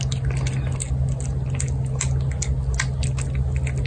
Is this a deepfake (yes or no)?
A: no